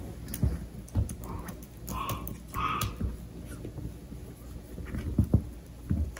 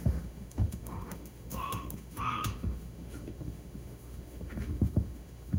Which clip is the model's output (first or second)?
second